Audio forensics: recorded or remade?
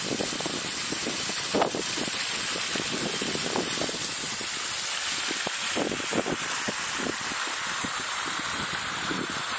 recorded